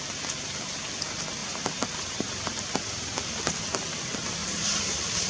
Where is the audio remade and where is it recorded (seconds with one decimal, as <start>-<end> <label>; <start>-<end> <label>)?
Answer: 0.0-1.4 recorded; 1.4-3.6 remade; 3.6-4.4 recorded; 4.4-5.3 remade